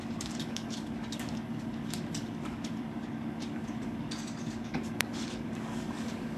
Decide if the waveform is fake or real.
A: fake